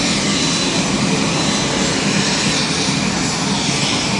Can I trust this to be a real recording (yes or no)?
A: yes